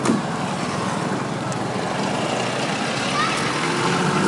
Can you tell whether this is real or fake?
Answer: real